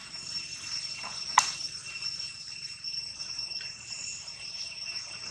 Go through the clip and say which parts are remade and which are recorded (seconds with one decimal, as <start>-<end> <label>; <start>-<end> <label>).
0.0-5.3 remade